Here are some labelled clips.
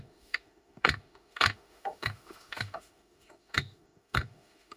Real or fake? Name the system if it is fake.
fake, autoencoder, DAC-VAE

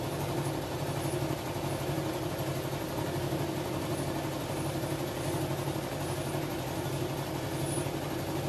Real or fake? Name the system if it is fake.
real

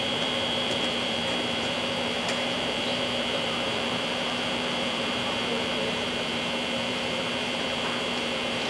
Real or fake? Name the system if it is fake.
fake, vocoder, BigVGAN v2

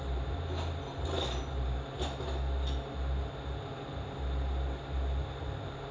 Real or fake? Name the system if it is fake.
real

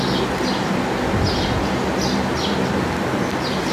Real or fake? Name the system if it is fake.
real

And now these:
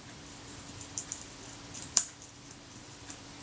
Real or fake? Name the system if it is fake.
fake, vocoder, BigVGAN v2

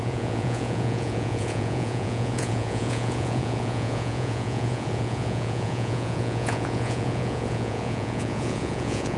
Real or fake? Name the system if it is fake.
fake, vocoder, Vocos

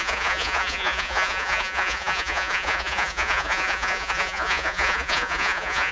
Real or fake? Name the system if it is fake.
fake, vocoder, Vocos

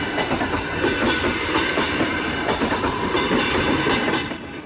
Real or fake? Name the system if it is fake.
fake, vocoder, BigVGAN v2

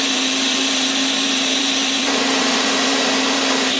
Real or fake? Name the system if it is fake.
fake, vocoder, BigVGAN v2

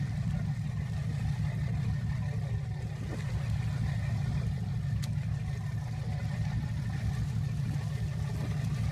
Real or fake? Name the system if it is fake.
real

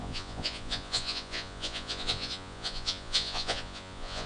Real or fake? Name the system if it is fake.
fake, vocoder, Vocos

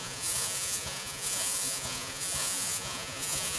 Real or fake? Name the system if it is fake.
fake, vocoder, Vocos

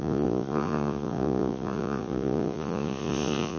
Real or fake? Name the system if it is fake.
fake, vocoder, Vocos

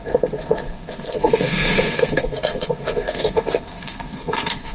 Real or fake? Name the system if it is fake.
fake, codec, SNAC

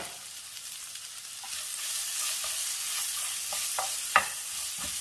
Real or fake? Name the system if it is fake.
real